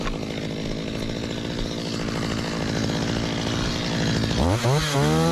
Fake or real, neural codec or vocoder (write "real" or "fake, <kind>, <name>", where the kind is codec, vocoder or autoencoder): real